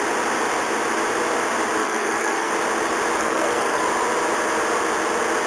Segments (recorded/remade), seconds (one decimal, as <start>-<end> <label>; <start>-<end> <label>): 0.0-1.8 recorded; 1.8-2.5 remade; 2.5-3.2 recorded; 3.2-3.8 remade; 3.8-5.5 recorded